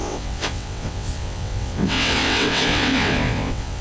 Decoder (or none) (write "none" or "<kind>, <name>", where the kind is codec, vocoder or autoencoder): vocoder, WaveNeXt